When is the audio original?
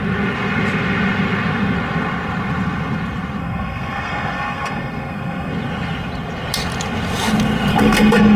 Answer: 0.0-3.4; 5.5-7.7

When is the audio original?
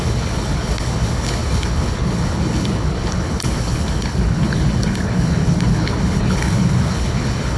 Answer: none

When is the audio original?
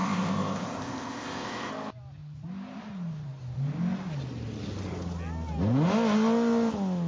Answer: 1.7-7.1